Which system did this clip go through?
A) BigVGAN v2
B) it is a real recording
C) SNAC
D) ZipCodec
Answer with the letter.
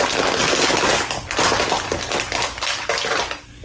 B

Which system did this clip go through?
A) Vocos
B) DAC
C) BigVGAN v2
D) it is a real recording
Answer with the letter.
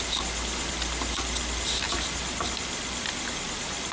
D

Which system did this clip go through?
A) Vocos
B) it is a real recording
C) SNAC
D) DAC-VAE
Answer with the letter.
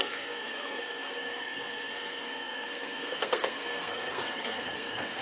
C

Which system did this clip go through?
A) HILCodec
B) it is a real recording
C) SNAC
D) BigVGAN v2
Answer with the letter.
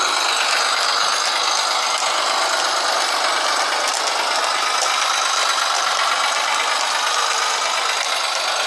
B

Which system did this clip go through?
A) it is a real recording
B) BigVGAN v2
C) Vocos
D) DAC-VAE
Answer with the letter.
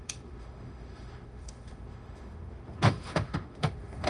D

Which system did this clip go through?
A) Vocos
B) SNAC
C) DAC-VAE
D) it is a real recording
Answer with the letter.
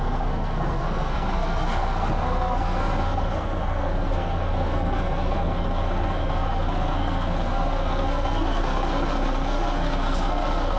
B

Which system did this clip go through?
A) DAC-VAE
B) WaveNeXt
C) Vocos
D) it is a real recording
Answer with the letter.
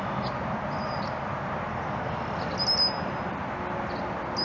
D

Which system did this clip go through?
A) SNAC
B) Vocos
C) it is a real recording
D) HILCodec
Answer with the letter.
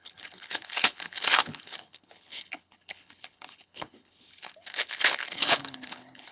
D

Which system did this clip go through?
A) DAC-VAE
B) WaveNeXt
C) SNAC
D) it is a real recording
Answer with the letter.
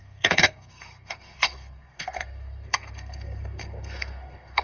C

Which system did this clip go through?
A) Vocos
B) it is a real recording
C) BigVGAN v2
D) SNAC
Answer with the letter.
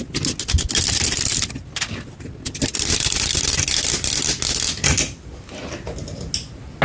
B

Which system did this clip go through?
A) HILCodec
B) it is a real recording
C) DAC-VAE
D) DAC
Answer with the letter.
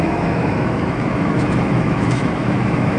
C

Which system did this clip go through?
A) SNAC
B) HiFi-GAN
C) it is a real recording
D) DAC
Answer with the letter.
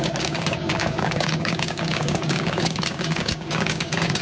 D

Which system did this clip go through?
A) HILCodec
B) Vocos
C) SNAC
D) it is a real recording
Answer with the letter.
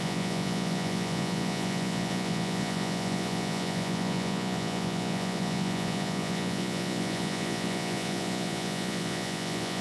B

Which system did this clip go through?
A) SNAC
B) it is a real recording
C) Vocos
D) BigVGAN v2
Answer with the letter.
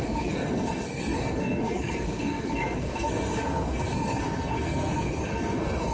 A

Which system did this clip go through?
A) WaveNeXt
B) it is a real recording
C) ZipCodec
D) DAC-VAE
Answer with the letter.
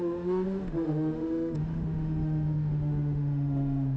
D